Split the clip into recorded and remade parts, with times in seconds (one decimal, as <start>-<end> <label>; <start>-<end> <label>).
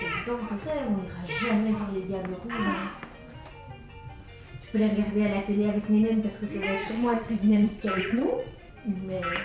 0.0-6.8 recorded; 6.8-8.7 remade; 8.7-9.4 recorded